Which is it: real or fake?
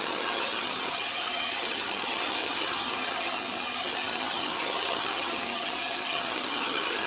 fake